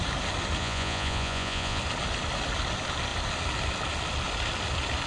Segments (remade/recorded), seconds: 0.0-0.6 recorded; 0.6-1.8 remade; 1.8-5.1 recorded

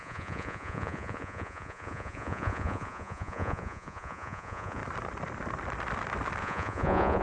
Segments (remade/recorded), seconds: 0.0-4.8 remade; 4.8-6.4 recorded; 6.4-7.2 remade

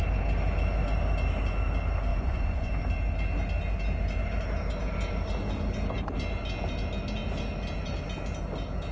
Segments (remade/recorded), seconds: 0.0-2.1 recorded; 2.1-2.7 remade; 2.7-8.9 recorded

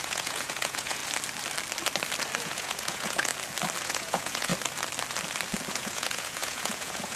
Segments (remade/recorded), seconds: 0.0-1.0 remade; 1.0-2.4 recorded; 2.4-3.3 remade; 3.3-3.8 recorded; 3.8-4.5 remade; 4.5-5.7 recorded; 5.7-7.2 remade

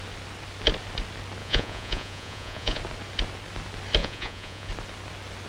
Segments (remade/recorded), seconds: 0.0-1.4 recorded; 1.4-2.8 remade; 2.8-4.0 recorded; 4.0-4.7 remade; 4.7-5.5 recorded

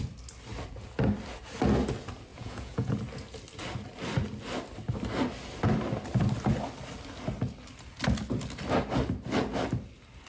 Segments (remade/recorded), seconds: 0.0-2.3 recorded; 2.3-2.9 remade; 2.9-10.3 recorded

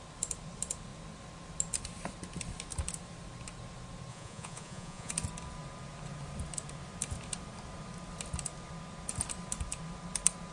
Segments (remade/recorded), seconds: 0.0-4.1 recorded; 4.1-5.1 remade; 5.1-10.5 recorded